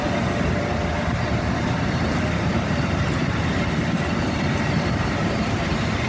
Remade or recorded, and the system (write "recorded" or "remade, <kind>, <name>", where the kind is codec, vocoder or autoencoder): remade, vocoder, BigVGAN v2